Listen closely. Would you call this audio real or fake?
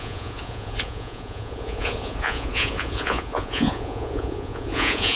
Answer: fake